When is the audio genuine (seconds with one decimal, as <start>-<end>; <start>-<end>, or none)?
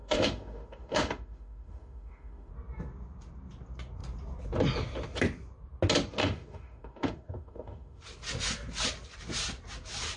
2.5-6.2; 8.0-10.2